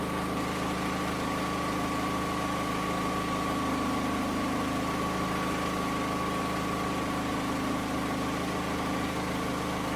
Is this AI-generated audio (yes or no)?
no